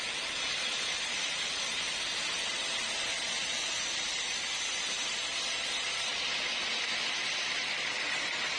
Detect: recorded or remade recorded